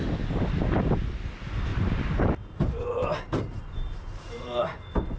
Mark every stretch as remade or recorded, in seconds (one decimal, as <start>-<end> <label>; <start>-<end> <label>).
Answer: 0.0-1.7 recorded; 1.7-4.8 remade; 4.8-5.2 recorded